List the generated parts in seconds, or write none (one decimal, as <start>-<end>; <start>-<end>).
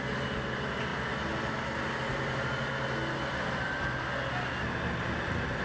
none